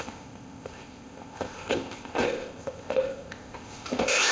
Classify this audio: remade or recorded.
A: remade